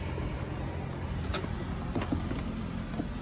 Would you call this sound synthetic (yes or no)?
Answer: no